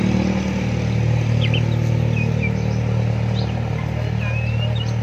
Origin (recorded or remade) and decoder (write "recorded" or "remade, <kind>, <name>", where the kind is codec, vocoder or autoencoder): recorded